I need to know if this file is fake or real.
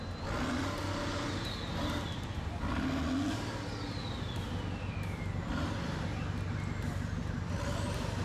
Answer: real